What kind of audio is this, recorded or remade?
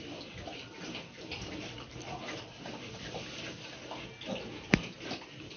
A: recorded